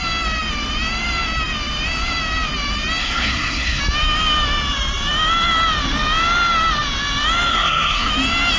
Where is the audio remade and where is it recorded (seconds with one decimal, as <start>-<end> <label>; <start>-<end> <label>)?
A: 0.0-3.0 recorded; 3.0-3.8 remade; 3.8-7.5 recorded; 7.5-8.1 remade; 8.1-8.6 recorded